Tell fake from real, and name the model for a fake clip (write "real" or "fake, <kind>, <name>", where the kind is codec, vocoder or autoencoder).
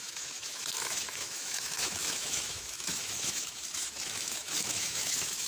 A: fake, autoencoder, DAC-VAE